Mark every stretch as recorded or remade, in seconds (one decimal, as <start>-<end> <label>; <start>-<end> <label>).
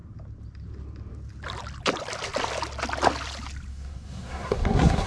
0.0-3.7 recorded; 3.7-5.1 remade